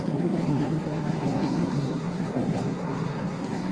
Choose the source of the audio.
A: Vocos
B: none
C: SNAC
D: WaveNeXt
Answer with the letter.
C